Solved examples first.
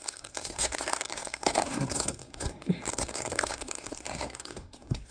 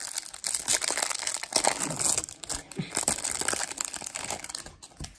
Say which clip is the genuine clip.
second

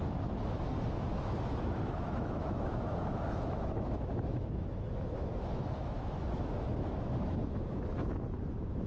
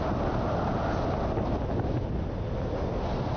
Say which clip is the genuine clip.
second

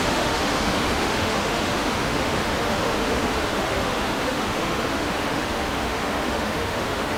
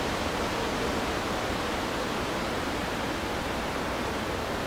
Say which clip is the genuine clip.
second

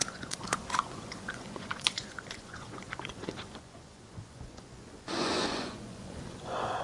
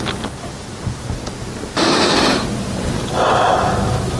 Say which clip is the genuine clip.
second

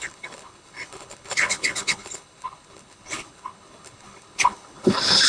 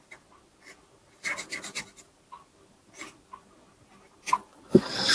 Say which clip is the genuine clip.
second